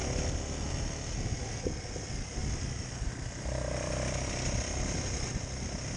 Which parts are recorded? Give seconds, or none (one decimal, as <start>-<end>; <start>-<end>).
0.0-2.4